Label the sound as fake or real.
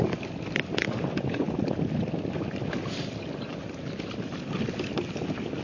real